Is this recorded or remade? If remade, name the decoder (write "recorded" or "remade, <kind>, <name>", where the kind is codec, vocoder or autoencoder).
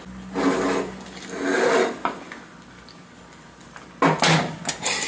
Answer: recorded